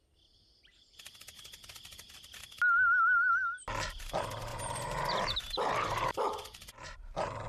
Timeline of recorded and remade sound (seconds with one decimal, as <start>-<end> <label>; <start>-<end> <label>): 0.0-4.5 recorded; 4.5-7.5 remade